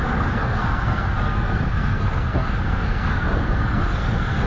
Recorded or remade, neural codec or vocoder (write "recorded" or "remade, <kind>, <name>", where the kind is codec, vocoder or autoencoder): remade, codec, SNAC